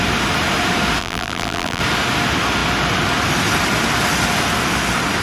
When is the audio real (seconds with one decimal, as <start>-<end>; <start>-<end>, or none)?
0.0-1.0; 1.8-5.2